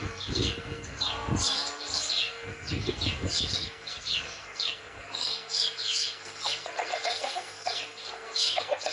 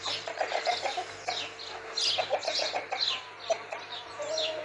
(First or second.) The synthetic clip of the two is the first